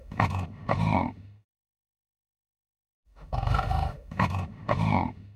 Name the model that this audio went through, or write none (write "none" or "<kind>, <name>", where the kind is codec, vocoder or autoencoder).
autoencoder, DAC-VAE